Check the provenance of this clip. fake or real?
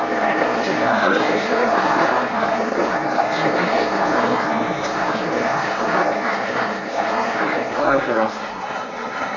fake